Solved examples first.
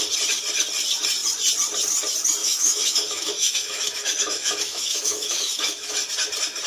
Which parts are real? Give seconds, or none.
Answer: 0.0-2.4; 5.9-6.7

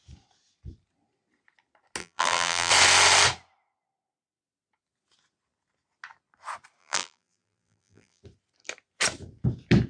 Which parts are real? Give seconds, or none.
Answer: 0.0-2.0; 2.7-6.8; 8.2-9.9

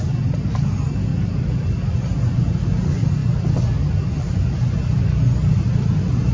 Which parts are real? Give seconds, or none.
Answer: 0.0-6.3

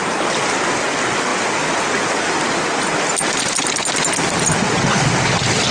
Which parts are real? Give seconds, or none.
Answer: 0.0-5.7

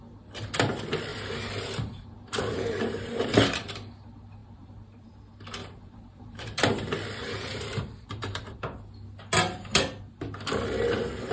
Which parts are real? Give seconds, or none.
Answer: 0.0-1.1; 3.3-4.4; 5.1-5.6; 6.7-7.2; 8.5-11.3

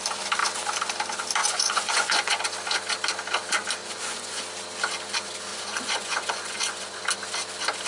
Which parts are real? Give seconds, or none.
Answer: 0.0-1.4; 2.4-3.8; 4.4-5.5; 7.0-7.9

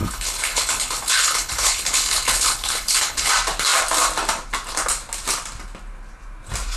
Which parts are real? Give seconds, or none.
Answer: 3.3-6.8

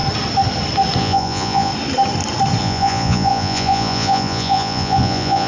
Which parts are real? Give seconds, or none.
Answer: 0.0-1.0; 1.7-2.6